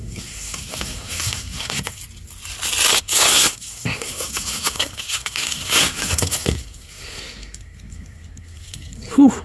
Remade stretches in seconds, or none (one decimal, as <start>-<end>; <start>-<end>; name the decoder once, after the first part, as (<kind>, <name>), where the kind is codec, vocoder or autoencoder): 0.0-2.0 (codec, SNAC); 3.0-9.4

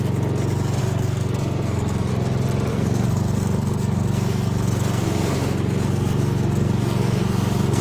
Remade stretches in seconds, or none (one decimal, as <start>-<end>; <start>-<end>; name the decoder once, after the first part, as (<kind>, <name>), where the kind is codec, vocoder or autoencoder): 0.8-2.1 (codec, SNAC); 2.7-7.8

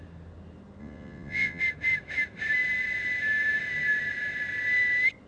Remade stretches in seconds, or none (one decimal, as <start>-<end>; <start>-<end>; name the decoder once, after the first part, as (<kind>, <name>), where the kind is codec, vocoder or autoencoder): 0.8-1.6 (vocoder, WaveNeXt)

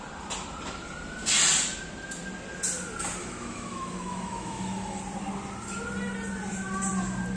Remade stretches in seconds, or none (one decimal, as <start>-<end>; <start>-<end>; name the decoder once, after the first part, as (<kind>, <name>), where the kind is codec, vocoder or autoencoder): 3.2-5.0 (autoencoder, DAC-VAE)

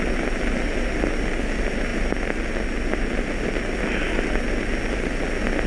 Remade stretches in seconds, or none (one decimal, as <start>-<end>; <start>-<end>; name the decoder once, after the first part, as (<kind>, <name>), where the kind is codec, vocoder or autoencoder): none

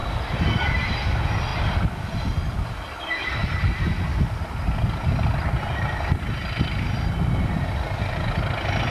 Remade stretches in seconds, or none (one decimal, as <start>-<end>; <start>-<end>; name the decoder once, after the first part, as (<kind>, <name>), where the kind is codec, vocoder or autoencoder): none

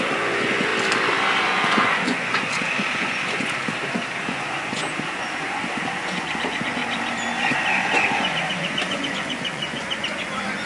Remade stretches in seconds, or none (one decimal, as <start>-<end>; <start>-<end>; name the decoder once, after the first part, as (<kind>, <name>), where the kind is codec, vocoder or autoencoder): 0.0-0.7 (vocoder, Vocos); 1.4-3.6; 4.2-6.8; 7.4-10.7

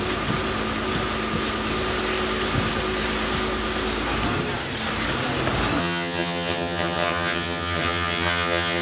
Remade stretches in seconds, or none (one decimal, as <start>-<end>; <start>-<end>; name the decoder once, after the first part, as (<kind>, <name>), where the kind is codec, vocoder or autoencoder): 5.8-8.8 (vocoder, HiFi-GAN)